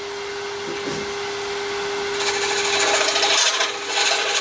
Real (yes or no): yes